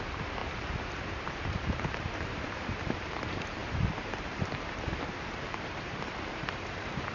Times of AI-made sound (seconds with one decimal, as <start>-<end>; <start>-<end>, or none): 0.0-7.1

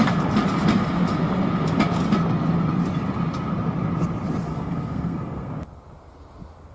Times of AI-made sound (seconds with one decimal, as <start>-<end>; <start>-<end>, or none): 4.5-5.5

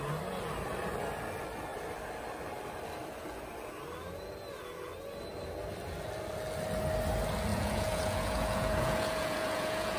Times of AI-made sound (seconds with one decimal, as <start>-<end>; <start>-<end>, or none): 7.5-10.0

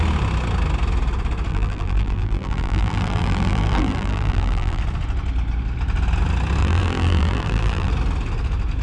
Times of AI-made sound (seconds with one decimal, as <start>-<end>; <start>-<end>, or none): 1.5-4.8; 6.6-7.9